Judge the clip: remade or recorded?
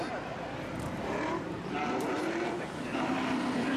remade